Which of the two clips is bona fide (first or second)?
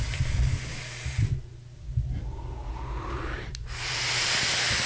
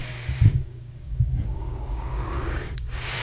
first